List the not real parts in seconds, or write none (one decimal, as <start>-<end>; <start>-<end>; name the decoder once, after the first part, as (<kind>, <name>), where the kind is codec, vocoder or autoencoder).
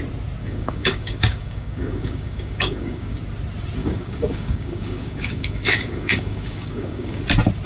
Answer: 0.4-3.2 (codec, DAC); 3.8-7.2